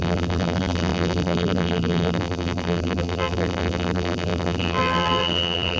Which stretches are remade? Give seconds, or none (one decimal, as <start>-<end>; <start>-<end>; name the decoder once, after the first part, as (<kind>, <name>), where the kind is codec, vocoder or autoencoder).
0.0-5.8 (vocoder, BigVGAN v2)